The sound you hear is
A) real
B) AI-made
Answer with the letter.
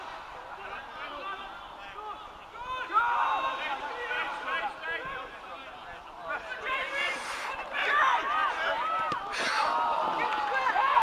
A